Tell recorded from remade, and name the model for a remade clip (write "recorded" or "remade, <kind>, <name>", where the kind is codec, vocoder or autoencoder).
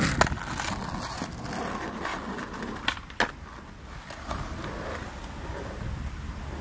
recorded